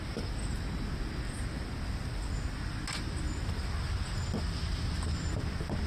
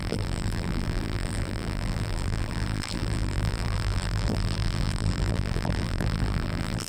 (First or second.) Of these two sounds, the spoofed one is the second